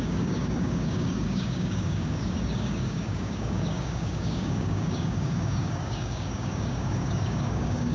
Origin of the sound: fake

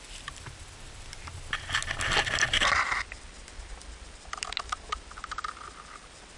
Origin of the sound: real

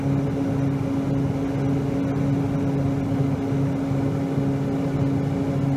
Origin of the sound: real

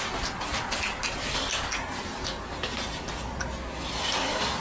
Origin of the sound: real